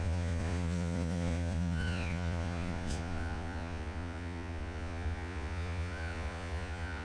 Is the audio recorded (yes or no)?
no